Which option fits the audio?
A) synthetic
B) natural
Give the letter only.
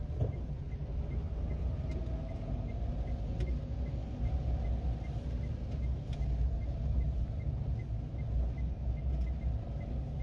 B